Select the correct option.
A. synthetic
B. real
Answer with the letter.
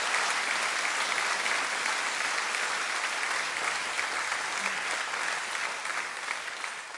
B